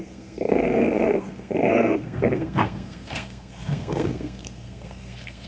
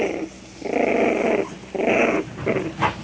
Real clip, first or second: second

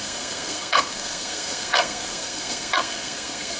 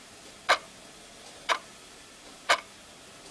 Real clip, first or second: second